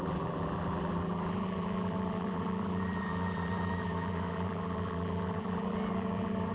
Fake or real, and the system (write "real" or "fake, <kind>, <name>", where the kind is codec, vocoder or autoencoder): fake, vocoder, BigVGAN v2